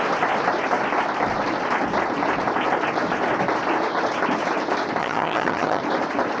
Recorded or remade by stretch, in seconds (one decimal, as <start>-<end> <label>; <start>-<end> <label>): 0.0-5.0 recorded; 5.0-5.8 remade; 5.8-6.4 recorded